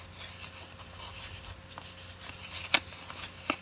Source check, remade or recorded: recorded